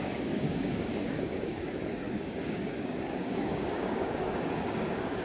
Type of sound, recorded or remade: remade